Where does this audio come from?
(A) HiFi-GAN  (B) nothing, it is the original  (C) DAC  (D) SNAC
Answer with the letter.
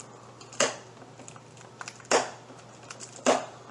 B